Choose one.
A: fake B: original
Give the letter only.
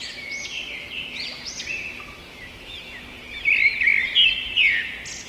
B